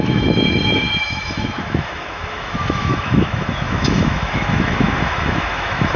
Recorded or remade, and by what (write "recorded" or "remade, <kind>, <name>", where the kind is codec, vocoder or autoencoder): remade, autoencoder, DAC-VAE